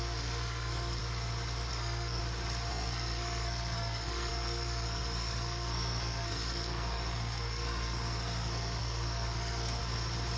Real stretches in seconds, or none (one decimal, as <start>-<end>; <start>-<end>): 1.0-1.7; 2.2-2.7; 9.8-10.4